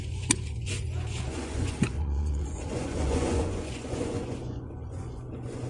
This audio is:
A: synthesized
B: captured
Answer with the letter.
A